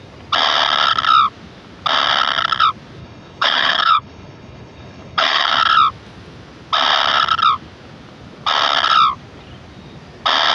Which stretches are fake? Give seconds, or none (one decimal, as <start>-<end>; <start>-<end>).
3.0-5.5